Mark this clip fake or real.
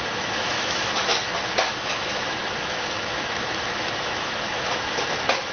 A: fake